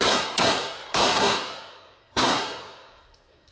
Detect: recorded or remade remade